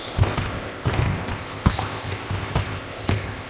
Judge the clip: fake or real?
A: fake